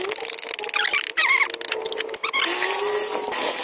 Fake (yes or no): no